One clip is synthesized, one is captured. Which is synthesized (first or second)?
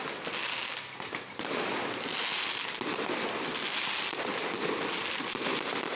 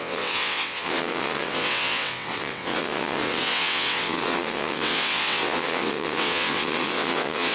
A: second